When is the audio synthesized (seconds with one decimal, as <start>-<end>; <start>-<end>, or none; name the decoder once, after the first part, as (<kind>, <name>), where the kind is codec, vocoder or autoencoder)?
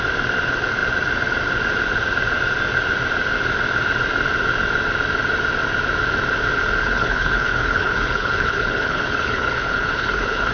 6.8-10.5 (codec, HILCodec)